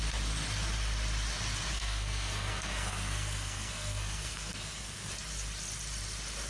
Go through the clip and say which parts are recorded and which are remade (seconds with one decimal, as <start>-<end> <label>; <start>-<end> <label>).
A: 0.0-1.7 recorded; 1.7-5.1 remade; 5.1-6.5 recorded